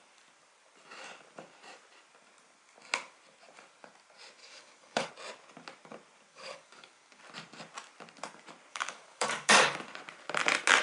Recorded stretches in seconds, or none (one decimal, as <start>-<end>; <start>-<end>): 0.0-4.4; 5.1-6.3; 7.2-8.7; 9.8-10.8